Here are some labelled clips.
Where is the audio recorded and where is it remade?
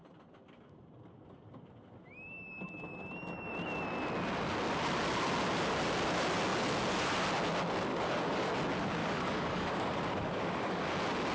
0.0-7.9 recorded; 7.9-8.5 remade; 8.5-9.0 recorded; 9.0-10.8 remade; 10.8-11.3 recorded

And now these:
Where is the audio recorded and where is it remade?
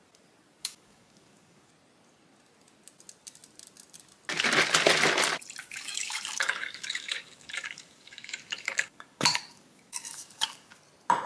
0.0-0.6 recorded; 0.6-1.7 remade; 1.7-5.6 recorded; 5.6-10.8 remade; 10.8-11.3 recorded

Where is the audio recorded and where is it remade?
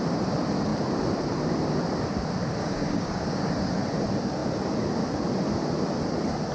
0.0-2.6 recorded; 2.6-3.5 remade; 3.5-6.5 recorded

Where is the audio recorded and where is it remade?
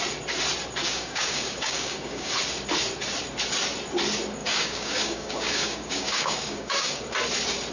0.0-0.8 recorded; 0.8-2.3 remade; 2.3-4.4 recorded; 4.4-7.1 remade; 7.1-7.7 recorded